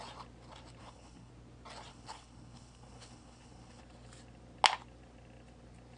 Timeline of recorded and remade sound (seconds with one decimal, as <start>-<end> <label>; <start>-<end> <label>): 0.0-0.8 recorded; 0.8-1.3 remade; 1.3-1.9 recorded; 1.9-3.8 remade; 3.8-6.0 recorded